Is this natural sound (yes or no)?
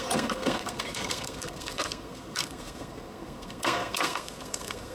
no